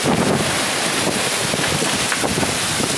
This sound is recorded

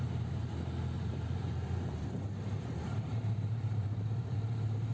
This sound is remade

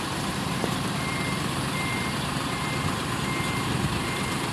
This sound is remade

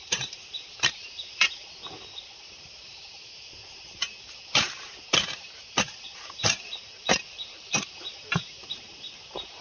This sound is remade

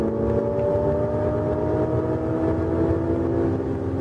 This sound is recorded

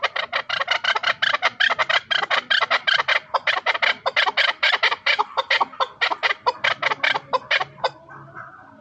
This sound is remade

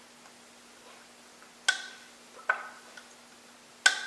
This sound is recorded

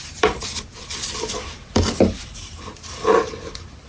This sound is remade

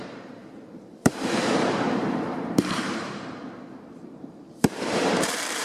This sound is remade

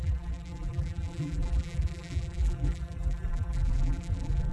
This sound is remade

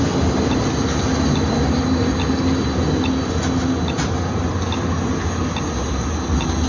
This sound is recorded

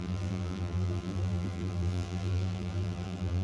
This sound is remade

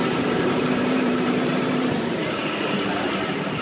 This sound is remade